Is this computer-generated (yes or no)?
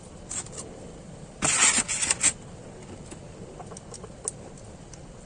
no